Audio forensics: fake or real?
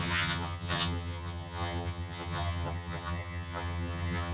fake